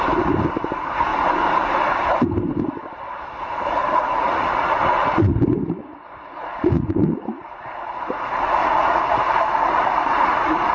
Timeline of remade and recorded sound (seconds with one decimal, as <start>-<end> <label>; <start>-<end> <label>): 0.0-3.8 recorded; 3.8-5.3 remade; 5.3-5.8 recorded; 5.8-10.7 remade